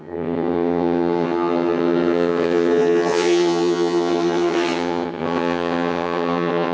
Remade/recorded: remade